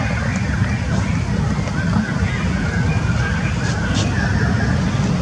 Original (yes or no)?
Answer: yes